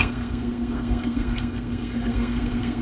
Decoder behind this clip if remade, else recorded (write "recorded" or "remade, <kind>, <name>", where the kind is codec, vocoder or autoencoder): remade, codec, SNAC